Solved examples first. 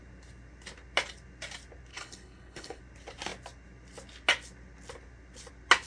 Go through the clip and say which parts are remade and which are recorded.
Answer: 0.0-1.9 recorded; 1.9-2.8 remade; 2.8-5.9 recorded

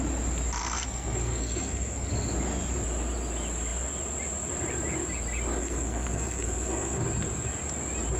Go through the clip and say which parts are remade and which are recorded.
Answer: 0.0-0.6 recorded; 0.6-2.1 remade; 2.1-5.6 recorded; 5.6-7.0 remade; 7.0-8.2 recorded